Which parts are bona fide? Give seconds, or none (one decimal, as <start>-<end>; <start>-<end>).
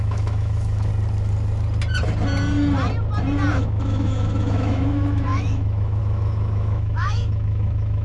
0.9-3.5